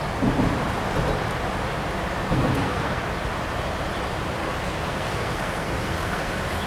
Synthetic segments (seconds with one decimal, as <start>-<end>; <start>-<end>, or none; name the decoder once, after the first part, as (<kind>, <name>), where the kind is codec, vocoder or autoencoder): 2.3-3.0 (codec, SNAC); 4.4-6.3

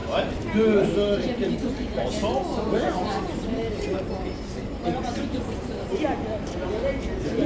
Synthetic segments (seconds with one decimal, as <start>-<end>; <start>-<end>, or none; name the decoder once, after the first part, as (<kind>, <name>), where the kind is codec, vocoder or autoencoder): none